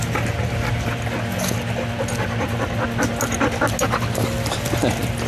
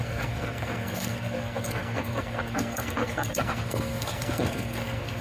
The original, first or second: first